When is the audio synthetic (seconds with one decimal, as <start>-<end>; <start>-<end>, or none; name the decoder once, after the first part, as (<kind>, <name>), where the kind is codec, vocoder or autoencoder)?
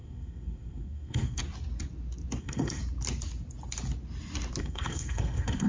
0.0-1.4 (codec, SNAC); 2.4-2.8; 4.6-5.7